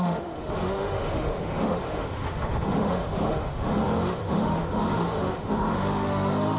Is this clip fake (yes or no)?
yes